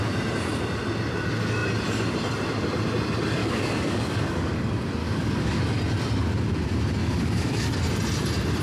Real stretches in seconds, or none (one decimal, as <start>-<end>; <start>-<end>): 0.0-3.4; 4.6-5.0; 5.6-7.0; 7.7-8.6